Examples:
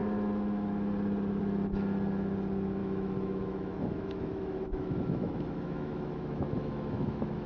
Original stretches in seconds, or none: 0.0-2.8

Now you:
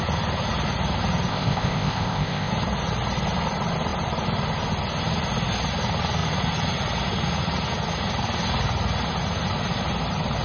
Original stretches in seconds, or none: 0.0-1.3; 2.5-10.4

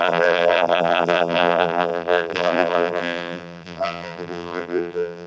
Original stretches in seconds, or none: none

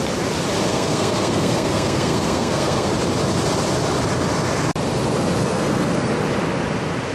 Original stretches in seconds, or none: 0.0-0.7; 2.9-5.4; 6.1-7.1